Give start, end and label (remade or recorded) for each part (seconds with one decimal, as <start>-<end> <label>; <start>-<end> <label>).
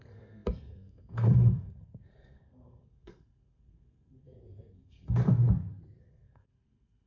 0.0-5.2 remade; 5.2-6.0 recorded; 6.0-7.1 remade